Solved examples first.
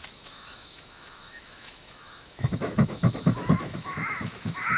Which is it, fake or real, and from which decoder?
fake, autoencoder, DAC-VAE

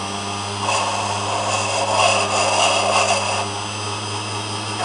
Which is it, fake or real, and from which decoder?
real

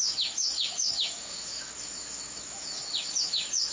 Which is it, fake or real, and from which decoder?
fake, autoencoder, DAC-VAE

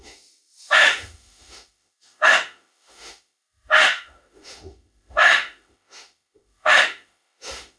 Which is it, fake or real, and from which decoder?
fake, autoencoder, DAC-VAE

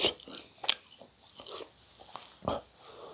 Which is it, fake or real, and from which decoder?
real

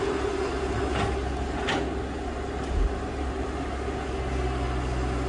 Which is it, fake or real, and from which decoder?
real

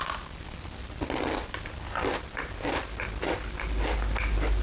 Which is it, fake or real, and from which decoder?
real